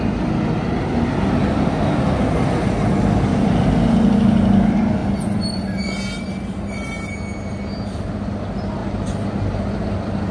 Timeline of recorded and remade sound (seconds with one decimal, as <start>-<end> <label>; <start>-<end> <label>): 0.0-10.3 recorded